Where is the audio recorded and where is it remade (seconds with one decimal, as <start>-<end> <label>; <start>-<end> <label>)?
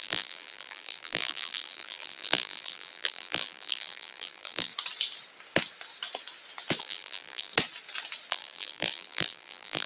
0.0-4.7 remade; 4.7-6.8 recorded; 6.8-7.5 remade; 7.5-8.3 recorded; 8.3-9.9 remade